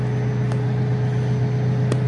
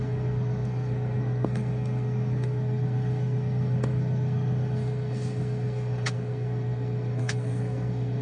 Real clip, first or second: first